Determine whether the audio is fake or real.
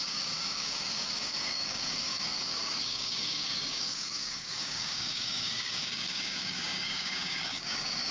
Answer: fake